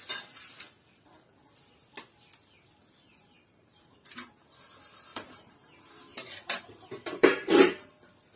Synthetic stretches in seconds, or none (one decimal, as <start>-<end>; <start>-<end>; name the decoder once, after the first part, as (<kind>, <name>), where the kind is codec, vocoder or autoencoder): 3.2-4.4 (vocoder, BigVGAN v2); 5.1-7.9